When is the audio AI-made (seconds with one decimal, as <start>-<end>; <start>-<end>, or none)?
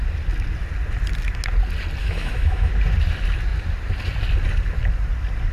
2.0-2.7